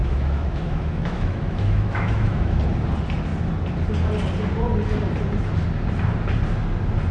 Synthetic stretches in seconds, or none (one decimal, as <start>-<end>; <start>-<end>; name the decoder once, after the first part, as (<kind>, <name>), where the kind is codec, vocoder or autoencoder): 0.0-2.6 (autoencoder, DAC-VAE)